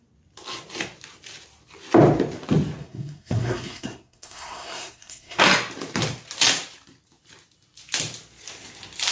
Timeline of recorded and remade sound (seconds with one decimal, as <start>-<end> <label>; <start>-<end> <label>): 0.0-2.8 recorded; 2.8-5.4 remade; 5.4-9.1 recorded